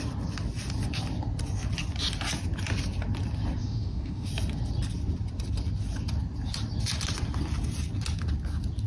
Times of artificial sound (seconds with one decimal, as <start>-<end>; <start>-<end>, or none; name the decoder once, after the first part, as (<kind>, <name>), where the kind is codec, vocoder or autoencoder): 3.6-4.3 (autoencoder, DAC-VAE)